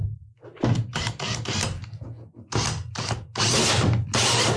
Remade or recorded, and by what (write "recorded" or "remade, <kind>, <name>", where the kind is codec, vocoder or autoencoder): recorded